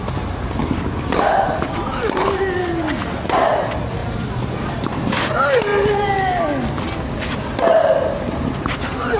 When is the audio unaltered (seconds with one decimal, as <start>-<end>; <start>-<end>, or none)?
0.0-4.0; 5.3-9.2